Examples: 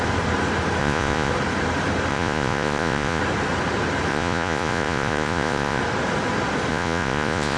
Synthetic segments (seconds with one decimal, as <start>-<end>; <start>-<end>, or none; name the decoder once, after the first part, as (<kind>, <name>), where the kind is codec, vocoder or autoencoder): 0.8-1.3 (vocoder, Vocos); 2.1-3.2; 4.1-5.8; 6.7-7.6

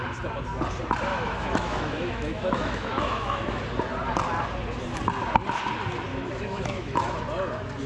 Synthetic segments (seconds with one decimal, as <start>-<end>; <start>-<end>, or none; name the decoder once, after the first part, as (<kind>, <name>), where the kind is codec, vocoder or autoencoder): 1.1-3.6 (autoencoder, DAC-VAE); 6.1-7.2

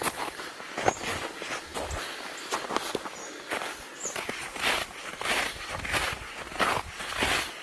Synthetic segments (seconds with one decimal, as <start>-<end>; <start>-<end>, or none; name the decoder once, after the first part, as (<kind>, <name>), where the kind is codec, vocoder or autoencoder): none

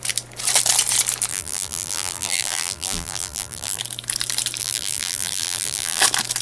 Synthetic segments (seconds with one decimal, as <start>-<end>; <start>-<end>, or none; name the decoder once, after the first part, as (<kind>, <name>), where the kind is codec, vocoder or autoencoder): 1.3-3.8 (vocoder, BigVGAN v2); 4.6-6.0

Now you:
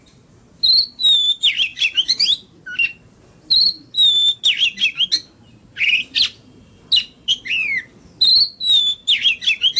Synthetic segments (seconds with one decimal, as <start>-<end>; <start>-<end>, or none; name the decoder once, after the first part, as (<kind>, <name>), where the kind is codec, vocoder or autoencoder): 1.7-2.6 (vocoder, BigVGAN v2)